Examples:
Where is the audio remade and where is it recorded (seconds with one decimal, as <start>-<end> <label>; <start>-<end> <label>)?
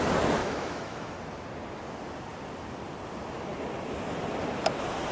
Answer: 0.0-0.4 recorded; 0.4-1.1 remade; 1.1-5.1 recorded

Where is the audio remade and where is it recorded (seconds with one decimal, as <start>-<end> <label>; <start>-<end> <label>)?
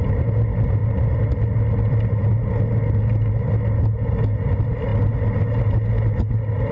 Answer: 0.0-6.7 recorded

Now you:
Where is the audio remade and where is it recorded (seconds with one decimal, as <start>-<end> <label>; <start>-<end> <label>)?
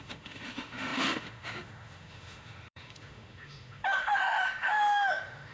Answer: 0.0-5.5 remade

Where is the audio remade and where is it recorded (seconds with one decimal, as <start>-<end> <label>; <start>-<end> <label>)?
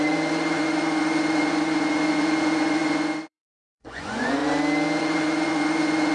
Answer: 0.0-4.4 remade; 4.4-5.0 recorded; 5.0-6.1 remade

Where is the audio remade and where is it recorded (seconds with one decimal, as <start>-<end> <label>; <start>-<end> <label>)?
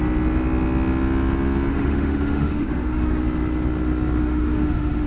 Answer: 0.0-1.7 recorded; 1.7-3.2 remade; 3.2-4.2 recorded; 4.2-5.1 remade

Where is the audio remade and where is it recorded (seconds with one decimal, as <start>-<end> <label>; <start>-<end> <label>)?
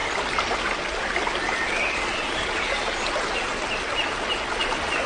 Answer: 0.0-5.1 recorded